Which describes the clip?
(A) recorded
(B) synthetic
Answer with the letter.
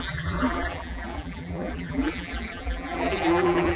B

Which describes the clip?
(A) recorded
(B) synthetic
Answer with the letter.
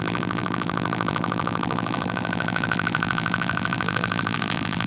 B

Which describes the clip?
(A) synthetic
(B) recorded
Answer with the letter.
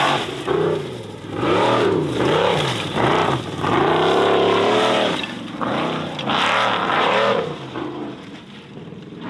A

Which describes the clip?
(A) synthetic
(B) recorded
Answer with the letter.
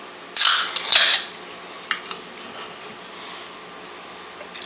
B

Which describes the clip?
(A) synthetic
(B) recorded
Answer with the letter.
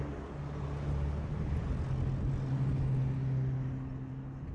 B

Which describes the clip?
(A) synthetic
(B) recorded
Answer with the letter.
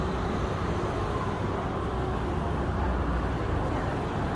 B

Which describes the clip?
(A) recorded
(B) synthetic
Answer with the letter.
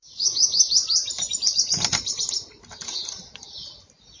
B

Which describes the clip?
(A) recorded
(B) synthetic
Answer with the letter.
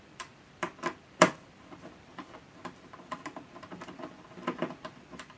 B